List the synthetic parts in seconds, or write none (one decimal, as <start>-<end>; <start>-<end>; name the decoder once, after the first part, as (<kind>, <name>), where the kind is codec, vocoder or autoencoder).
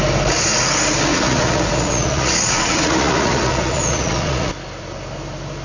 1.1-4.5 (vocoder, Vocos)